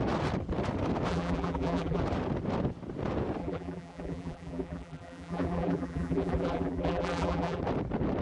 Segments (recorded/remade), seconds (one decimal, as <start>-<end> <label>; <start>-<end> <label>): 0.0-1.1 recorded; 1.1-2.0 remade; 2.0-3.4 recorded; 3.4-7.6 remade; 7.6-8.2 recorded